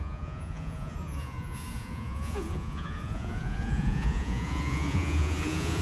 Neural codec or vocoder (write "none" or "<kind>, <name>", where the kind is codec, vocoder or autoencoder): vocoder, Vocos